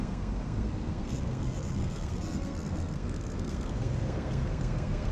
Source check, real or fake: fake